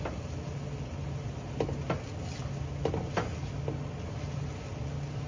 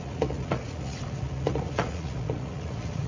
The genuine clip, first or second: first